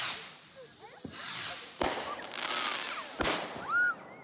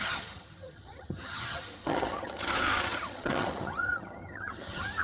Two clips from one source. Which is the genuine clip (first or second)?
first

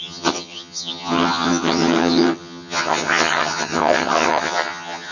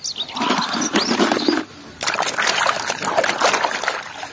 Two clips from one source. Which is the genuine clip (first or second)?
second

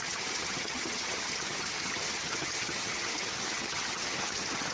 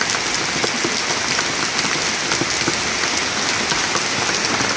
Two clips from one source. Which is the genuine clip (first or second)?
second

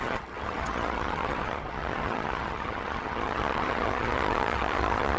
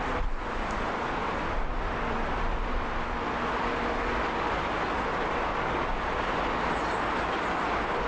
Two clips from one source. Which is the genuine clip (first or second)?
second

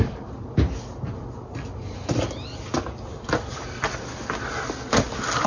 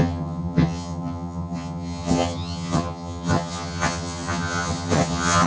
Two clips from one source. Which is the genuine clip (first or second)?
first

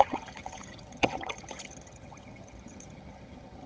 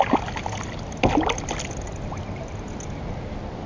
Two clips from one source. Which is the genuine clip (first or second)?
second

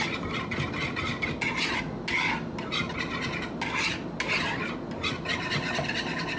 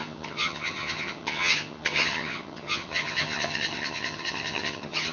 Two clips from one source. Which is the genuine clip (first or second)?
first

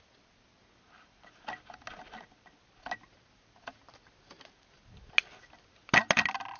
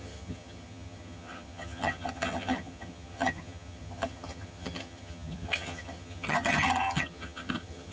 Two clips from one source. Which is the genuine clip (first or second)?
first